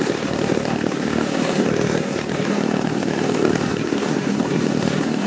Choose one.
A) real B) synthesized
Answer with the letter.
B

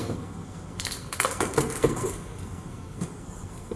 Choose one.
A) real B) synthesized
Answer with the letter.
B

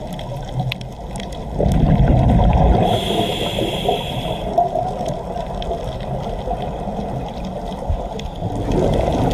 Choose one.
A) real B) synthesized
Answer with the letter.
A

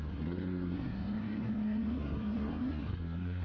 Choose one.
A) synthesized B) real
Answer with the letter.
A